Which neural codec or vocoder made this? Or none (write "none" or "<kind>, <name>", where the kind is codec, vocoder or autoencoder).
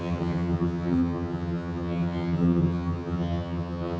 vocoder, HiFi-GAN